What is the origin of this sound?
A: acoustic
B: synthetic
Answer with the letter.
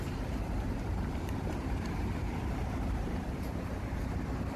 B